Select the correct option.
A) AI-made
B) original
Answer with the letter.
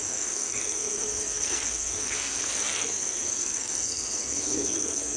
A